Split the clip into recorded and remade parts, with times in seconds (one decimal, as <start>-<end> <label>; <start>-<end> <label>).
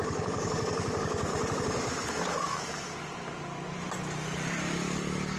0.0-1.3 remade; 1.3-4.5 recorded; 4.5-5.4 remade